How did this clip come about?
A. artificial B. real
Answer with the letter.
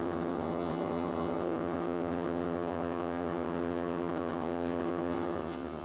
A